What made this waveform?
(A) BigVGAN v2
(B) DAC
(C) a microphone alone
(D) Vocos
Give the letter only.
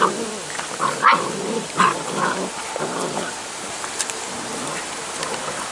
A